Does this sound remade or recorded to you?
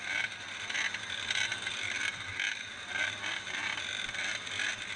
recorded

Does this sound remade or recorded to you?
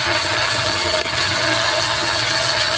remade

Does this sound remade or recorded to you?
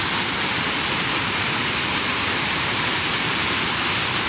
remade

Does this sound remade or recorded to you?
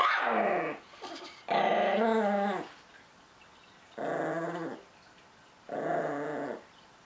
recorded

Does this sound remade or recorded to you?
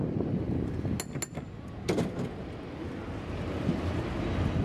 recorded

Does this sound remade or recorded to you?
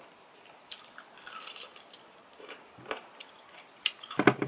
recorded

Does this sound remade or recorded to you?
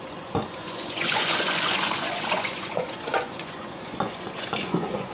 remade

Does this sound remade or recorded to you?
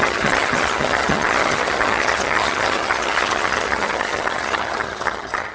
remade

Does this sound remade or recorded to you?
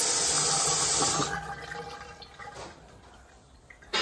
recorded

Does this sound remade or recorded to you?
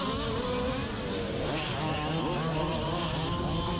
recorded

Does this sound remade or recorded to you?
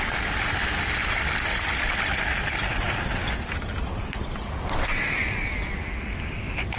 recorded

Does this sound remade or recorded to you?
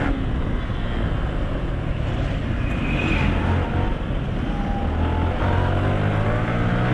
recorded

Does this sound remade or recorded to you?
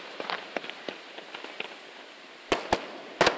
recorded